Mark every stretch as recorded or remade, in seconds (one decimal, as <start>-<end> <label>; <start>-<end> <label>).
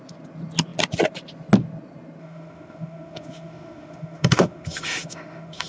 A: 0.0-2.2 recorded; 2.2-5.7 remade